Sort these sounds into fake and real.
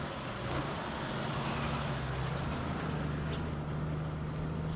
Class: real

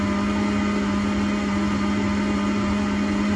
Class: real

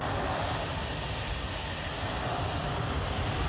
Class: real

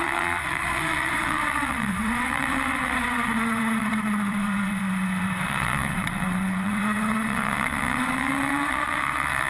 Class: fake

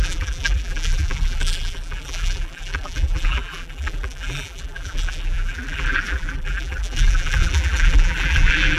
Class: fake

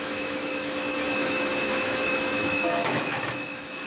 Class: fake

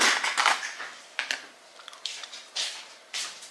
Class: real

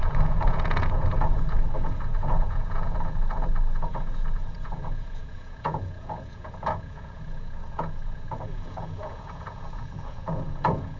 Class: fake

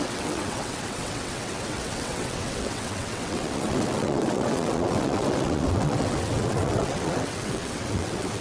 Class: fake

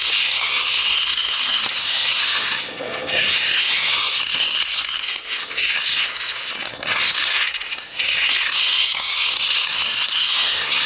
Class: fake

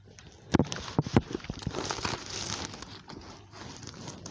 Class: real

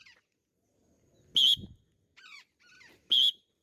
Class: real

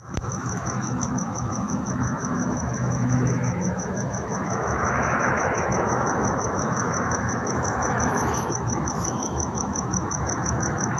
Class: fake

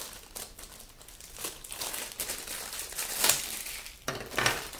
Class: fake